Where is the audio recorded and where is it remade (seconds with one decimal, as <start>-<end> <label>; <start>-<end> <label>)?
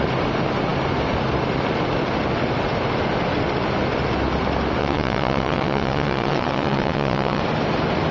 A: 0.0-4.8 recorded; 4.8-7.4 remade; 7.4-8.1 recorded